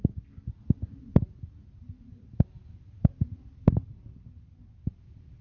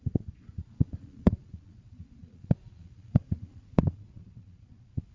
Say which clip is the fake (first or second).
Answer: second